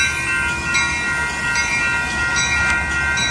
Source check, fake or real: real